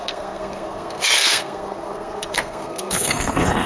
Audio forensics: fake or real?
fake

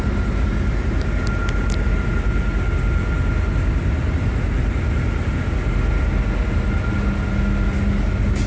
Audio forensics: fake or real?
real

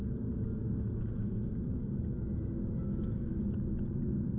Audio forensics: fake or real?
real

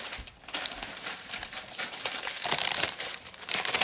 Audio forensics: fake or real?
fake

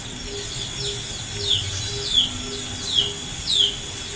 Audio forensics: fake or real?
real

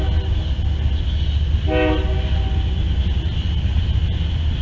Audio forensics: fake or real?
real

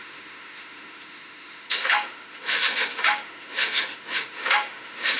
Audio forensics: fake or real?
fake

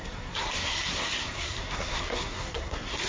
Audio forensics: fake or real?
fake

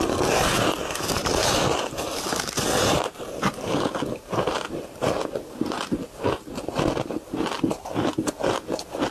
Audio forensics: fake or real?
real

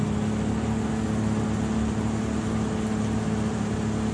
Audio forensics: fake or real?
real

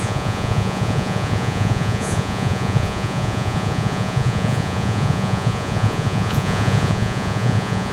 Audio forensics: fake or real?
fake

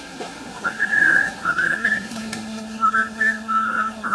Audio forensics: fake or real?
fake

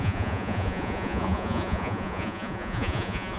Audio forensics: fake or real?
fake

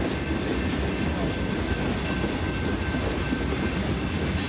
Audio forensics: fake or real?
real